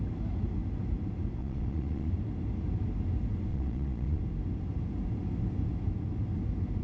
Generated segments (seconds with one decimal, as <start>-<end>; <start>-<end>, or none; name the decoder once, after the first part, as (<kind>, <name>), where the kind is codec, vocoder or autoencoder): 1.4-2.1 (vocoder, Vocos); 3.5-4.2